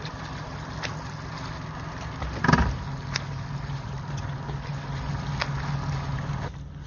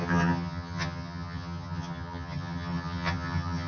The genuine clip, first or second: first